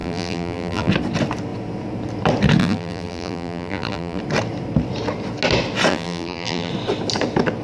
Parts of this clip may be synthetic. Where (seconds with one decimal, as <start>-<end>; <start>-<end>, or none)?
0.0-0.9; 2.6-4.2; 5.9-6.7